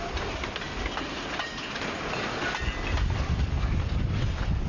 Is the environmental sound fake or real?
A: real